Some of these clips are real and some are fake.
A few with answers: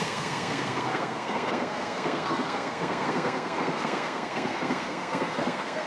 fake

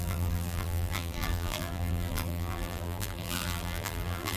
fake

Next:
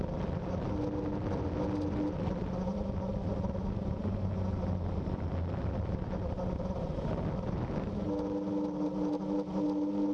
real